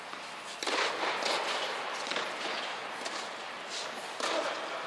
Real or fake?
real